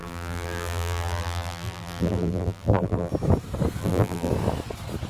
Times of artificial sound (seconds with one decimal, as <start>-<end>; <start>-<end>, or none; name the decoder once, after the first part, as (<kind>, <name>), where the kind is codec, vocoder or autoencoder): 0.0-3.1 (vocoder, BigVGAN v2); 3.8-4.3